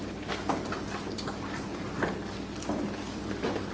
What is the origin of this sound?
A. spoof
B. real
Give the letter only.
B